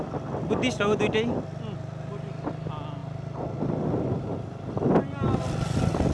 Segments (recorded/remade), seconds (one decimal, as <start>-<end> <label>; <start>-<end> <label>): 0.0-6.1 recorded

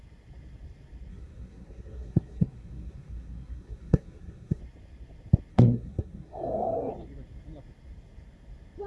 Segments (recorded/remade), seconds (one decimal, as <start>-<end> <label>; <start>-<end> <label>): 0.0-1.1 recorded; 1.1-4.6 remade; 4.6-5.5 recorded; 5.5-6.9 remade; 6.9-8.9 recorded

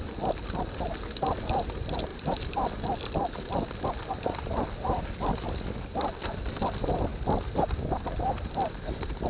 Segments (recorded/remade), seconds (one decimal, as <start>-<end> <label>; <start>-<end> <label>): 0.0-9.3 recorded

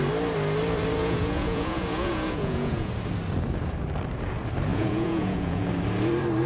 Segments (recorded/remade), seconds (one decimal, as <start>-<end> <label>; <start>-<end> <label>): 0.0-1.0 recorded; 1.0-2.9 remade; 2.9-4.7 recorded; 4.7-5.7 remade; 5.7-6.5 recorded

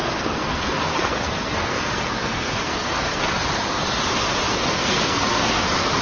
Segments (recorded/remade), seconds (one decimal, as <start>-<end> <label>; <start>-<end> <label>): 0.0-3.4 remade; 3.4-4.5 recorded; 4.5-5.6 remade; 5.6-6.0 recorded

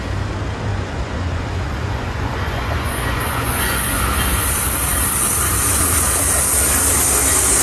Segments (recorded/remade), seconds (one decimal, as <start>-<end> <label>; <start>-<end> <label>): 0.0-0.7 recorded; 0.7-4.0 remade; 4.0-7.6 recorded

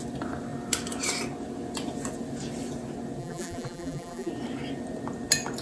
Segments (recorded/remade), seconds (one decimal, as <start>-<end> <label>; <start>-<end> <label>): 0.0-3.2 recorded; 3.2-4.3 remade; 4.3-5.6 recorded

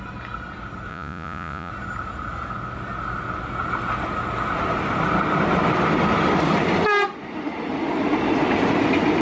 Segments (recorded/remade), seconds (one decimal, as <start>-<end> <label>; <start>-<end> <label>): 0.0-0.9 recorded; 0.9-1.7 remade; 1.7-9.2 recorded